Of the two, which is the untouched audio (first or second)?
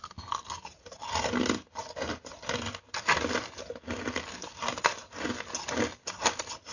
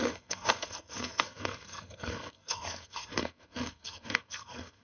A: first